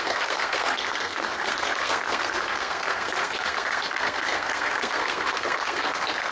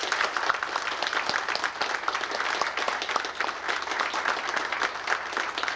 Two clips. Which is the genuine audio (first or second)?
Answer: second